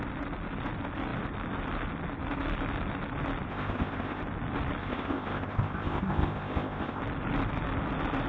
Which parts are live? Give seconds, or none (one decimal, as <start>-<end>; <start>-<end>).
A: 0.0-3.5; 4.2-4.8; 7.0-8.3